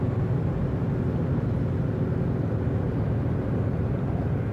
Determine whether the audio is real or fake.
real